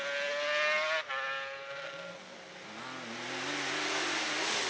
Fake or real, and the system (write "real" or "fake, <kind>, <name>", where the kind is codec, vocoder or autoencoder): real